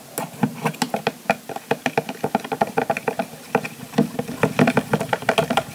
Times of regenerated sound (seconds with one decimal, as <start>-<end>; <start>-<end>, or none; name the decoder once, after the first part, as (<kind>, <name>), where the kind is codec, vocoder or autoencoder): none